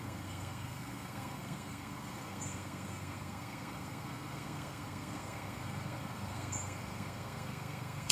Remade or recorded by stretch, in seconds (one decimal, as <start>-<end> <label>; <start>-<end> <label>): 0.0-8.1 remade